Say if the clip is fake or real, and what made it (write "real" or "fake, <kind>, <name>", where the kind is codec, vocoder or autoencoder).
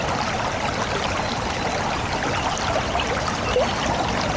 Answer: real